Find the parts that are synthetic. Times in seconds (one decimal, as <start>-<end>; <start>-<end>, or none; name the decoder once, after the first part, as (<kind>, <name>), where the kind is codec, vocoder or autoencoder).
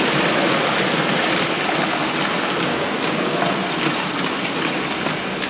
2.7-3.4 (codec, DAC)